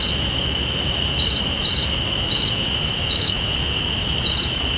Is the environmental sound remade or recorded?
remade